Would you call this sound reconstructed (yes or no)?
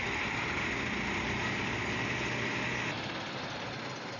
no